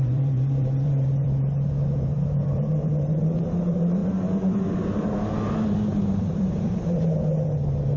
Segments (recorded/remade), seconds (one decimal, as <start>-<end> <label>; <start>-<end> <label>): 0.0-8.0 remade